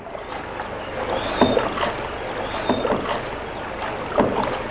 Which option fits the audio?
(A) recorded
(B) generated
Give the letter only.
A